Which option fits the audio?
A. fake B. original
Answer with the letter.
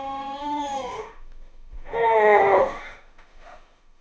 A